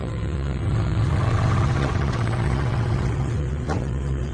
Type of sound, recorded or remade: remade